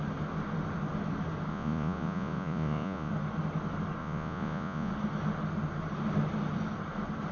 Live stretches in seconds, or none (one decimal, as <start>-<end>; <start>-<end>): 0.0-1.5; 3.1-4.0; 4.9-7.3

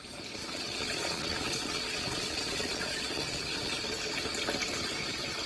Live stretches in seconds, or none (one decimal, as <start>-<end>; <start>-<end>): 0.0-0.4; 3.7-5.5

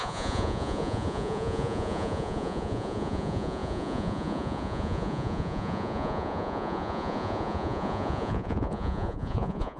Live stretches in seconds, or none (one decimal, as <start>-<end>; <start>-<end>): none

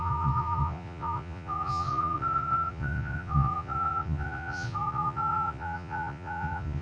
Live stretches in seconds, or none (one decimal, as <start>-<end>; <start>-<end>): none